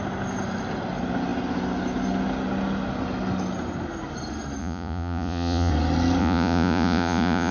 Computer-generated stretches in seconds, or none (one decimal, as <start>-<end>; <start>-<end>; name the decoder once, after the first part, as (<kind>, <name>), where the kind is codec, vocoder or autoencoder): 4.6-5.7 (vocoder, Vocos); 6.2-7.5